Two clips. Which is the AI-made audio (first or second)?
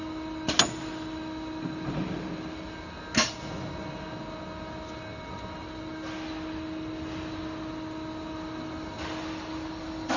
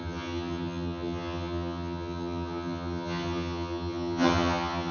second